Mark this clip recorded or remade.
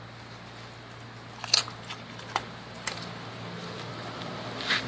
recorded